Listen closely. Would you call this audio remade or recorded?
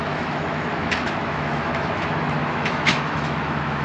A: remade